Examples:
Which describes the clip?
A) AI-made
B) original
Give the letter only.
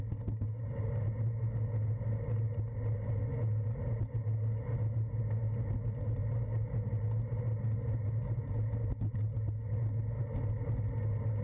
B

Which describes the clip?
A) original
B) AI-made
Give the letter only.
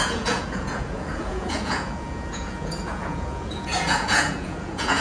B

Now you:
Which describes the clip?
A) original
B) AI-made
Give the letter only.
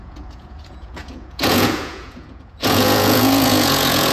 B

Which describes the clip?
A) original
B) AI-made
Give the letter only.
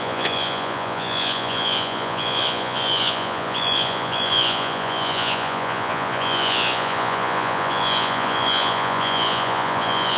B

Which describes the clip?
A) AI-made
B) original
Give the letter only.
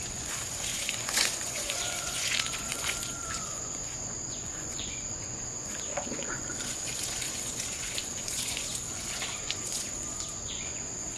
A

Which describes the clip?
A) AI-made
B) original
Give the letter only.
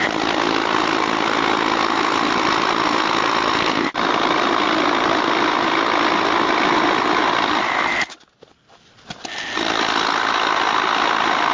B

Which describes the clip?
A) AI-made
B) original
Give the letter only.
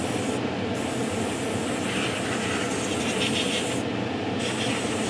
B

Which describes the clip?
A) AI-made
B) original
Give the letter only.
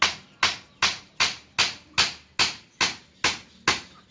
B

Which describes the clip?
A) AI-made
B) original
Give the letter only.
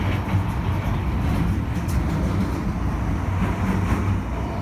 B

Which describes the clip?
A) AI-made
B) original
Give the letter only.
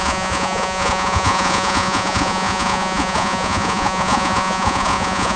A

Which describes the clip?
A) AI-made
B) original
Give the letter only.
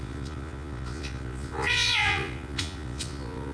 A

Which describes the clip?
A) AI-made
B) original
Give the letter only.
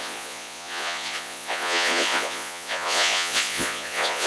A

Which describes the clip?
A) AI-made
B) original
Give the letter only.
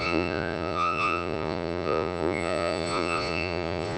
A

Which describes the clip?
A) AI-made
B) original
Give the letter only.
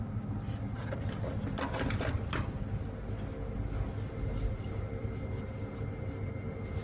B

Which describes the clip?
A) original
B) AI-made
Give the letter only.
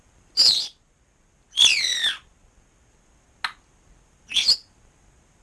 A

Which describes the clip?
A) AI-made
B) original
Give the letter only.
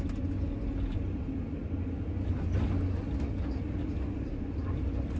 B